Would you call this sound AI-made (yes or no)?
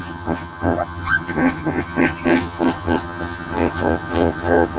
yes